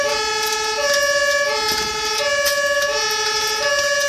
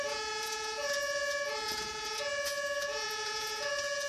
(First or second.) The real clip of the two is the first